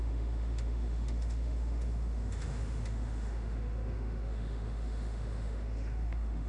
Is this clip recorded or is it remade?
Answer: remade